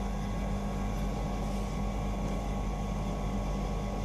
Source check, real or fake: real